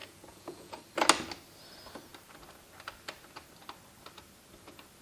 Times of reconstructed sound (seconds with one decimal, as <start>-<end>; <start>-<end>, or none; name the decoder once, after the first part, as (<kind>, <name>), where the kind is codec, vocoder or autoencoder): 0.0-0.8 (vocoder, Vocos)